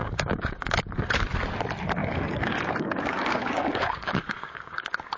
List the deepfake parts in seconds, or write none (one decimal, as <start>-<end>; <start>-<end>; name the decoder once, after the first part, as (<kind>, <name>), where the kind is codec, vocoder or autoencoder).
0.0-0.8 (codec, DAC); 2.0-5.2

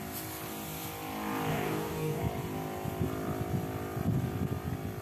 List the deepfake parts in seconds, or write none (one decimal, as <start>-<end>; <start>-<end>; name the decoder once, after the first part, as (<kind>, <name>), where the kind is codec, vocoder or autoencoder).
1.5-2.2 (codec, DAC)

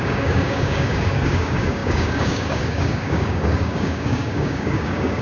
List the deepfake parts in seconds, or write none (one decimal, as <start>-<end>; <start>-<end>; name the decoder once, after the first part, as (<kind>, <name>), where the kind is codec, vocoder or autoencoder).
0.0-5.2 (codec, DAC)

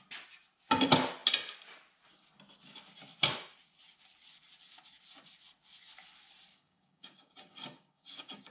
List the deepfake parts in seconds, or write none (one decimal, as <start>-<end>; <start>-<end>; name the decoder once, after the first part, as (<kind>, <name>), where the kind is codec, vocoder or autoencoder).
6.5-8.5 (codec, DAC)

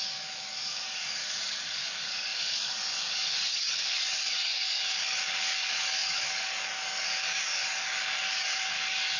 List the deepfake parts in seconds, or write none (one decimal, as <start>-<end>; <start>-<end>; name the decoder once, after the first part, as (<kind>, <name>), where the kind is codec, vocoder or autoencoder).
0.0-9.2 (codec, DAC)

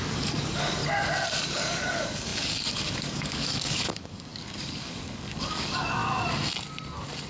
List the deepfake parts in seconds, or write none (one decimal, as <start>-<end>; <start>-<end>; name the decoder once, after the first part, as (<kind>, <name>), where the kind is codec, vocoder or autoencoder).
0.0-0.8 (codec, DAC); 1.5-6.0

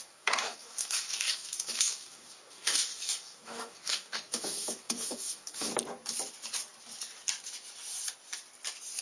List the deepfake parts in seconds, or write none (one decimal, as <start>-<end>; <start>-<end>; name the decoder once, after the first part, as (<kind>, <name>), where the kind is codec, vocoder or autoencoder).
0.0-5.7 (codec, DAC)

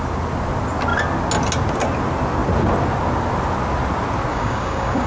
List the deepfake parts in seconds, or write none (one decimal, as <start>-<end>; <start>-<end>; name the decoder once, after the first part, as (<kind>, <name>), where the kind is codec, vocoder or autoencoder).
4.3-5.1 (codec, DAC)